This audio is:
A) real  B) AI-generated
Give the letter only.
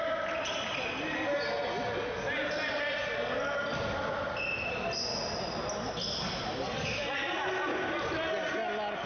A